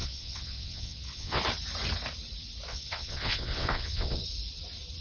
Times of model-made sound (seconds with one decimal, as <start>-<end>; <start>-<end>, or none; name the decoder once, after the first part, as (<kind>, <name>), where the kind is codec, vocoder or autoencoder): 0.0-1.4 (vocoder, WaveNeXt); 2.7-4.2